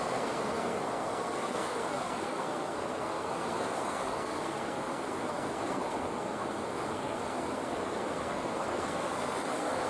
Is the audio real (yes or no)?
no